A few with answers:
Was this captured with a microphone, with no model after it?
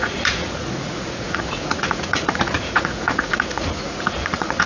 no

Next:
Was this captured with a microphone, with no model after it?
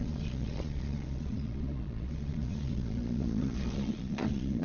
no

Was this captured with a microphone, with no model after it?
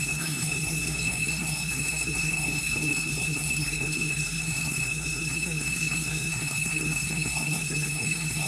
no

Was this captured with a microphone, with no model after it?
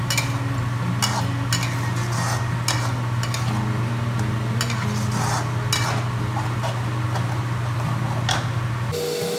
yes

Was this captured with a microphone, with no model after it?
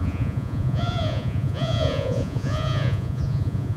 no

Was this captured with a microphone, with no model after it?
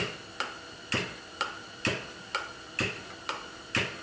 yes